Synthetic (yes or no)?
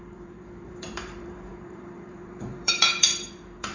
yes